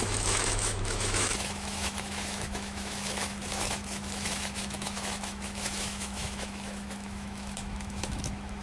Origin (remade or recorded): remade